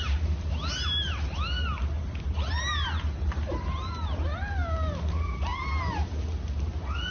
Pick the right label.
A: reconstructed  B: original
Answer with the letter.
B